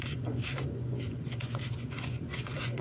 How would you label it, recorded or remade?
remade